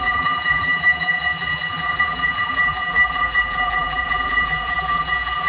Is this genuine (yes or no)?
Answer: no